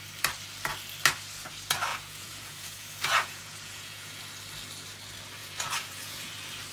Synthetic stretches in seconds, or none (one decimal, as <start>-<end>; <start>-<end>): 1.9-4.2; 5.4-6.3